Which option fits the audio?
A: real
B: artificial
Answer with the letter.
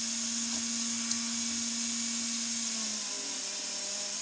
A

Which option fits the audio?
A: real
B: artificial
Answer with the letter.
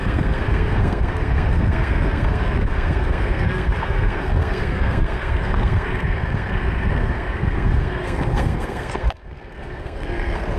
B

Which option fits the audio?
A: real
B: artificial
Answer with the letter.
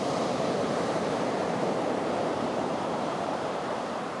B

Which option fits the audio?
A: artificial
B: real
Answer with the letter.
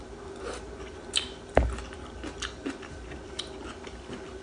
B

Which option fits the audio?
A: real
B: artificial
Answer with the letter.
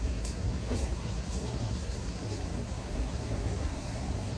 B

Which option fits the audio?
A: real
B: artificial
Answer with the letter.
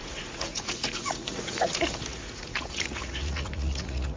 B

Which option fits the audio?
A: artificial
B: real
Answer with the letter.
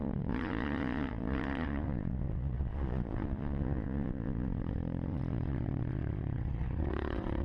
A